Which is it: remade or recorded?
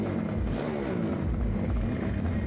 recorded